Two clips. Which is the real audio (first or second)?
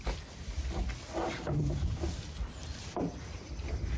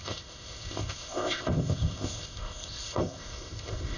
first